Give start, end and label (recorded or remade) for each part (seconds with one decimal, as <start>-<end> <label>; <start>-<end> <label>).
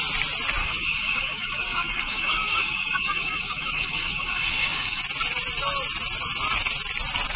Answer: 0.0-0.6 recorded; 0.6-5.0 remade; 5.0-7.4 recorded